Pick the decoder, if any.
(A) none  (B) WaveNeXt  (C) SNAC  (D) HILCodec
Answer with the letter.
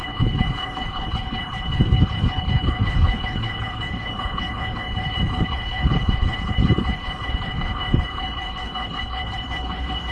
D